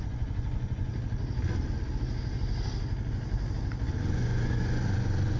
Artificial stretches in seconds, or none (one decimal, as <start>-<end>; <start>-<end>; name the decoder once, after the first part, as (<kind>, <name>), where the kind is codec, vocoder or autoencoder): 0.0-0.9 (vocoder, Vocos); 4.0-5.4